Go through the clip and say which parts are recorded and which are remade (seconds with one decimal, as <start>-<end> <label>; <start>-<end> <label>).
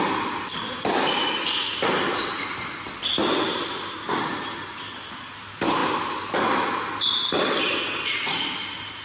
0.0-9.0 recorded